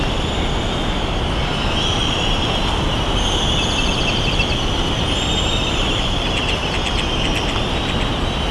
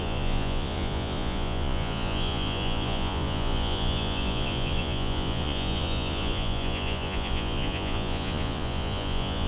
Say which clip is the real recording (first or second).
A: first